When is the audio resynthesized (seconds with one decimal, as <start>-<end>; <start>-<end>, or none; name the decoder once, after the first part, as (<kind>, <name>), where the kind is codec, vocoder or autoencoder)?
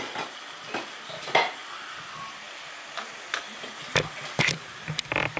none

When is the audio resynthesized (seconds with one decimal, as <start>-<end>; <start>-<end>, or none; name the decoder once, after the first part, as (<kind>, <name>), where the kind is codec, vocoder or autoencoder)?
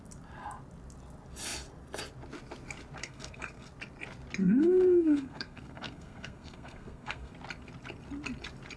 3.0-3.7 (codec, SNAC); 4.4-7.3